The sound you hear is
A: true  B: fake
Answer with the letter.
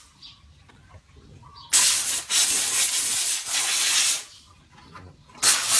A